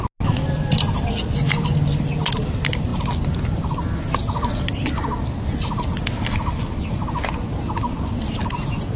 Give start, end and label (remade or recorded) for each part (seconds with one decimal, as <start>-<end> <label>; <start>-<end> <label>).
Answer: 0.0-9.0 recorded